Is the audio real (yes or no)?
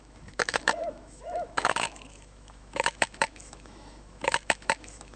no